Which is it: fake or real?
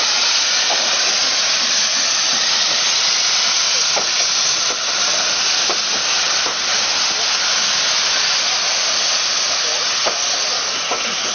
real